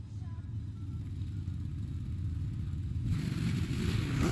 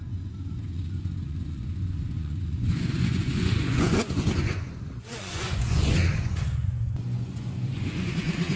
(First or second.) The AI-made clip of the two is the second